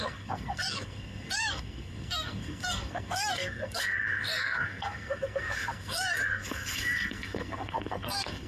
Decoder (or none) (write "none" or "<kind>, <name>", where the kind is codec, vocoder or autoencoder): codec, SNAC